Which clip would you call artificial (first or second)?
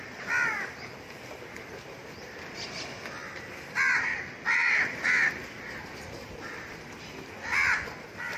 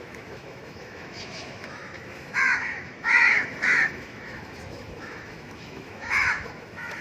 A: second